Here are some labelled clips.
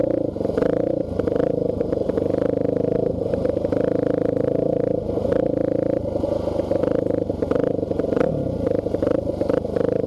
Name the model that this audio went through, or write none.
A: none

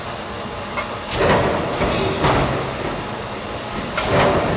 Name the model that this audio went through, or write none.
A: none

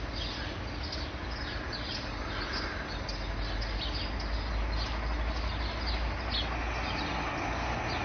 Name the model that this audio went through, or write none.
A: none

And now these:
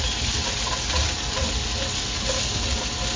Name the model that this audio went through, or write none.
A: none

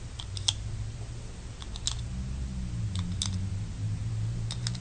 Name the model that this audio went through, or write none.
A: none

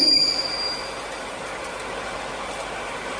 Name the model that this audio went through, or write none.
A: none